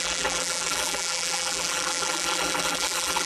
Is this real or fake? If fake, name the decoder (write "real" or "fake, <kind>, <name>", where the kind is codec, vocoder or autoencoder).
fake, vocoder, BigVGAN v2